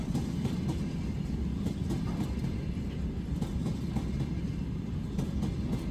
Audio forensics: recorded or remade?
recorded